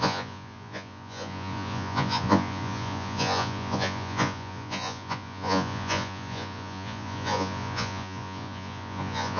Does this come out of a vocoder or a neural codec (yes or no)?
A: yes